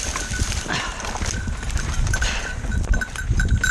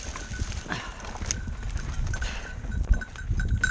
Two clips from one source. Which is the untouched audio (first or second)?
second